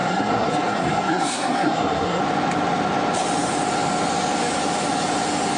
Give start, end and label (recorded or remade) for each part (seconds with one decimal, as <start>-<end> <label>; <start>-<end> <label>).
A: 0.0-2.2 remade; 2.2-5.6 recorded